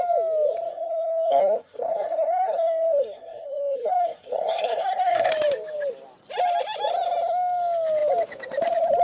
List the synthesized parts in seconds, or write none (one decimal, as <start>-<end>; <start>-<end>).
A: 0.7-5.3